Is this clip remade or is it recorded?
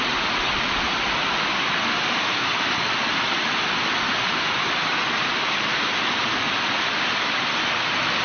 recorded